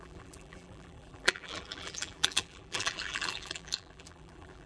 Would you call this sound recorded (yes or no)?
no